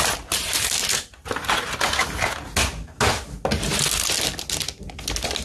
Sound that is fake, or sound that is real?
real